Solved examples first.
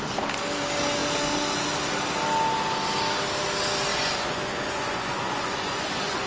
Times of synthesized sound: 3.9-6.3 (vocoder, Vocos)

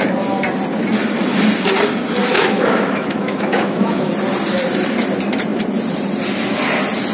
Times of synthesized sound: 2.2-4.1 (autoencoder, DAC-VAE)

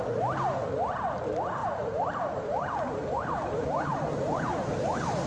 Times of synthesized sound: 0.0-0.6 (vocoder, BigVGAN v2); 1.2-3.9; 4.4-5.3

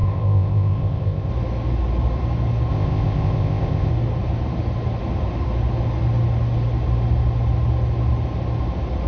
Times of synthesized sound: 0.0-1.3 (codec, ZipCodec); 2.7-3.9